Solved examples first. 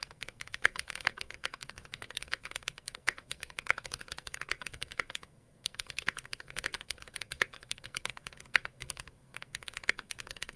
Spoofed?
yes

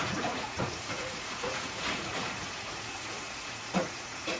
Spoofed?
yes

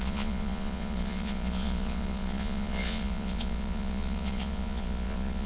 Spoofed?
yes